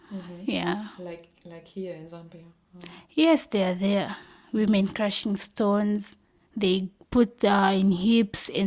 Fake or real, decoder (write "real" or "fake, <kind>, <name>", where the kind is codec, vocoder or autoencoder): real